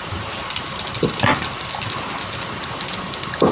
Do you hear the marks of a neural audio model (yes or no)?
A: no